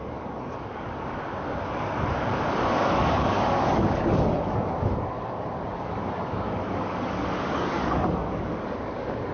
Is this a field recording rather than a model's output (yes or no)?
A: no